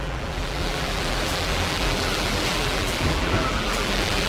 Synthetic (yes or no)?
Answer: yes